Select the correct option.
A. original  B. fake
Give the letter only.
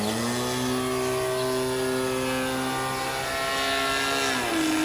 A